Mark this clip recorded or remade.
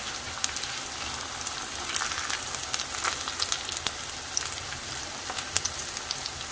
recorded